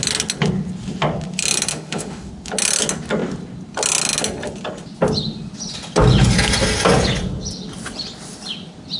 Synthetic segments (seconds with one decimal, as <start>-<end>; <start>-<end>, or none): 1.7-2.3